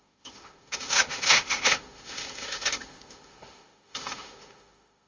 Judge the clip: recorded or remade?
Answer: remade